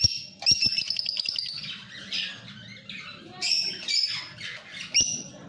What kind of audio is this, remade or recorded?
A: recorded